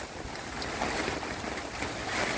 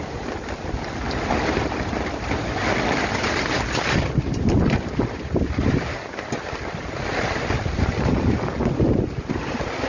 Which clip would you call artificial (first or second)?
second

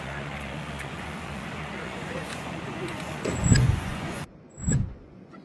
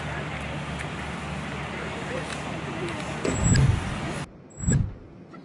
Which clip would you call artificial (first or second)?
first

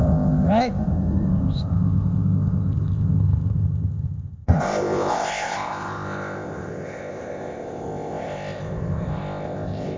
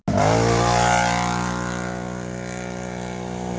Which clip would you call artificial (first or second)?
first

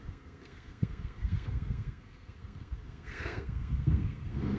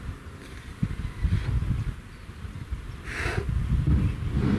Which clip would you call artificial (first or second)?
first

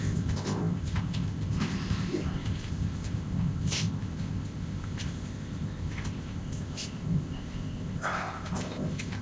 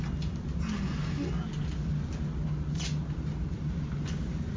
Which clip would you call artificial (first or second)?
first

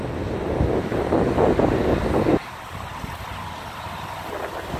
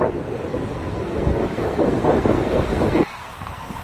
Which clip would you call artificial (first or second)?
second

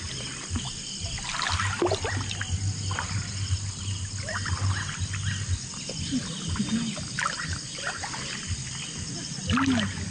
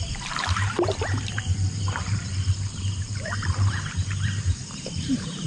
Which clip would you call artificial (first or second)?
second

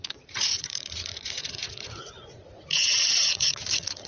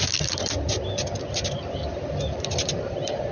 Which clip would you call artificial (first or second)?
first